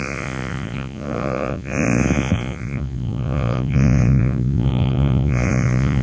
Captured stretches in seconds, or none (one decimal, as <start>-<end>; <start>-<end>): none